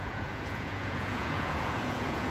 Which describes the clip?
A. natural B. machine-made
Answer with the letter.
B